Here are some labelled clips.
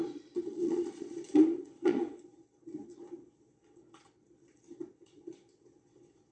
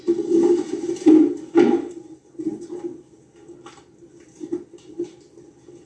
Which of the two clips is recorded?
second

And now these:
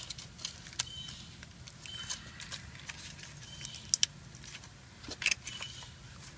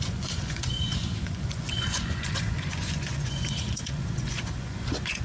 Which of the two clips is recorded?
first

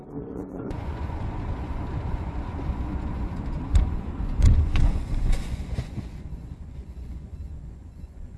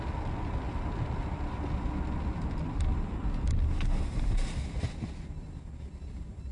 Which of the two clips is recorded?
second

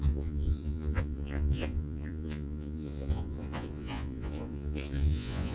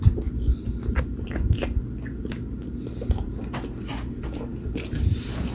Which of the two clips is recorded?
second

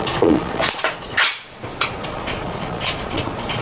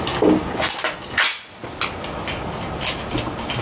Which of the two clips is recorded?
second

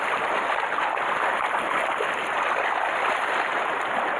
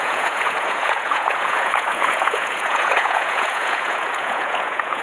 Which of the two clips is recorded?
first